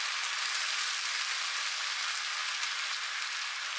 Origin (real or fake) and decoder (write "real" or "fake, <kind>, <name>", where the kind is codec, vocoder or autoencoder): real